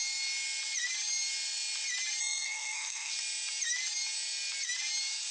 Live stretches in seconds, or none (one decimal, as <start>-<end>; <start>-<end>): 0.0-2.2; 3.1-5.3